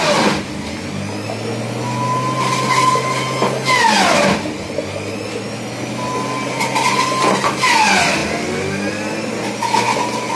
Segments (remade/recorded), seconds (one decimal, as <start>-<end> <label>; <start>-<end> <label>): 0.0-10.4 recorded